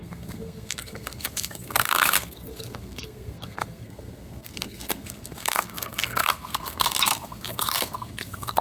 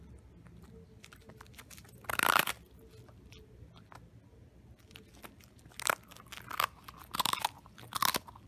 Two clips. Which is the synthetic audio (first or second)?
first